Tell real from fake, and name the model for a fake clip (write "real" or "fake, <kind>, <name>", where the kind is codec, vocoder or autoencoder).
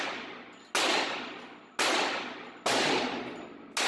real